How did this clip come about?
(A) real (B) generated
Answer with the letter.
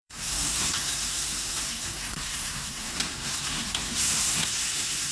B